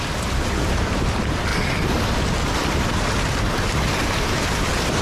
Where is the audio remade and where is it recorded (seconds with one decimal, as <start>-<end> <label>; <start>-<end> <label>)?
0.0-1.5 remade; 1.5-2.2 recorded; 2.2-5.0 remade